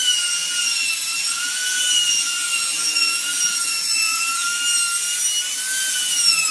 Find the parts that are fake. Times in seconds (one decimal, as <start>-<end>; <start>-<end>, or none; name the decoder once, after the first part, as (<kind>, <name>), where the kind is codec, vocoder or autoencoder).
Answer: 0.0-4.5 (vocoder, Vocos); 5.9-6.5